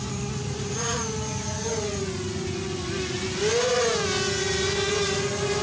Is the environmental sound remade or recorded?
recorded